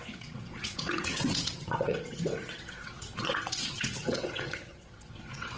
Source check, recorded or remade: remade